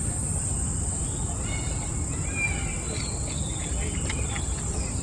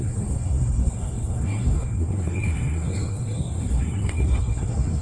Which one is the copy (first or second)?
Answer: second